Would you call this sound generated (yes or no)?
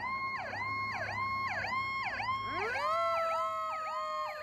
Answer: no